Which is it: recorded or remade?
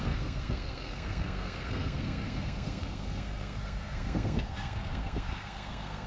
remade